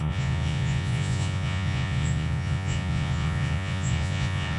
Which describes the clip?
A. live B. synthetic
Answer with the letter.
B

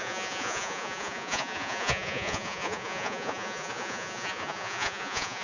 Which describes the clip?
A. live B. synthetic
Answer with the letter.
B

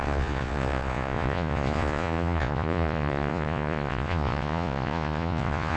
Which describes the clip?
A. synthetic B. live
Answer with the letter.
A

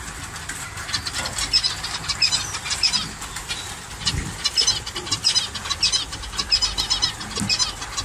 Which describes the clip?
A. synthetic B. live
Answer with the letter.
B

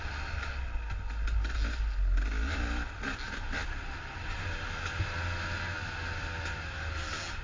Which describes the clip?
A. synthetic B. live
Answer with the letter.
B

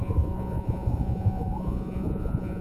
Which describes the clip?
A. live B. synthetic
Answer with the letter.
B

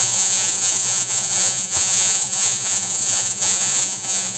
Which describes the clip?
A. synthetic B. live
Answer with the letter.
A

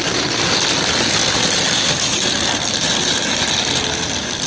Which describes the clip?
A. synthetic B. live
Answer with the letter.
B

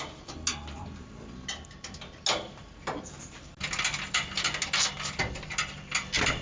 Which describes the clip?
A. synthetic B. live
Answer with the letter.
B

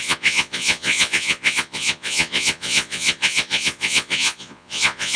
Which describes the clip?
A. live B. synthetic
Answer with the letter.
B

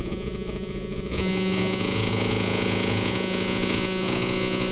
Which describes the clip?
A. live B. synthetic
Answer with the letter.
B